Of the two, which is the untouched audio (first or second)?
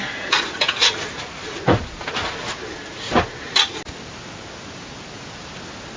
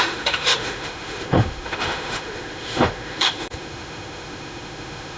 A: first